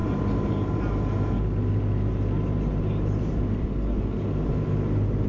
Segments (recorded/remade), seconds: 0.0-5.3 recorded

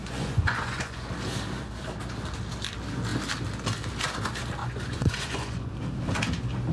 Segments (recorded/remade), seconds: 0.0-1.1 remade; 1.1-4.6 recorded; 4.6-5.7 remade; 5.7-6.7 recorded

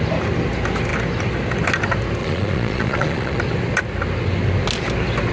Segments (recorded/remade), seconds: 0.0-2.2 recorded; 2.2-3.4 remade; 3.4-5.3 recorded

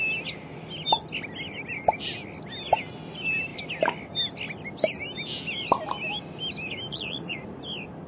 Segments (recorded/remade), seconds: 0.0-6.9 recorded; 6.9-7.6 remade; 7.6-8.1 recorded